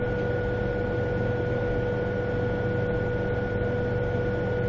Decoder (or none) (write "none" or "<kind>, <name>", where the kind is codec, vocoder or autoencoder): none